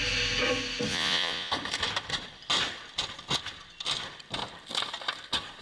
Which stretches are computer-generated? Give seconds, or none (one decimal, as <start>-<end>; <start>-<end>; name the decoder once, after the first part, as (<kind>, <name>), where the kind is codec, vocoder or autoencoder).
0.9-1.5 (vocoder, Vocos)